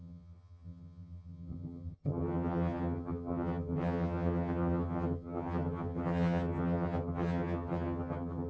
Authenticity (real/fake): fake